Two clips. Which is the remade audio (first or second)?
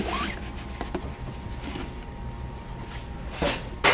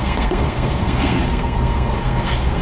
second